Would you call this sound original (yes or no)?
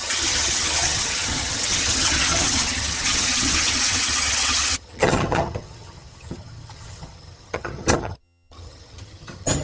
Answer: no